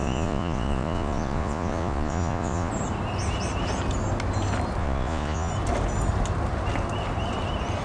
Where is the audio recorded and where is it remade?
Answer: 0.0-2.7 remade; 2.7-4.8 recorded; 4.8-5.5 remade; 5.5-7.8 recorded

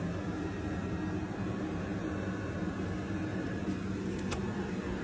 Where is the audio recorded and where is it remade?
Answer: 0.0-3.3 recorded; 3.3-4.6 remade; 4.6-5.0 recorded

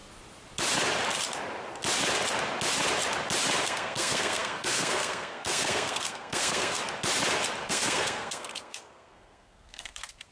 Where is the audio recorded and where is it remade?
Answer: 0.0-3.6 recorded; 3.6-6.8 remade; 6.8-7.7 recorded; 7.7-10.3 remade

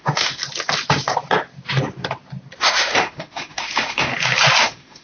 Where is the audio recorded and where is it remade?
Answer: 0.0-0.4 remade; 0.4-2.6 recorded; 2.6-4.1 remade; 4.1-4.6 recorded; 4.6-5.0 remade

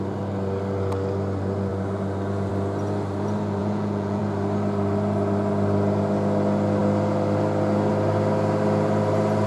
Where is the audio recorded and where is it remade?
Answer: 0.0-3.6 recorded; 3.6-4.2 remade; 4.2-9.5 recorded

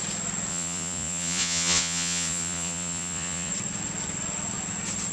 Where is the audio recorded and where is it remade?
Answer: 0.0-0.5 recorded; 0.5-3.5 remade; 3.5-5.1 recorded